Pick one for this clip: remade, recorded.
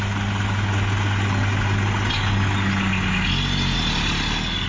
recorded